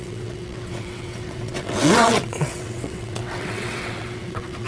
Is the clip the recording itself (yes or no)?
no